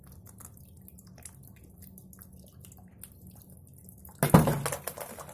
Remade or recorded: recorded